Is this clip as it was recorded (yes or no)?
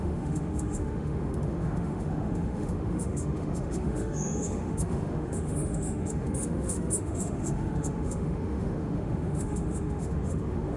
no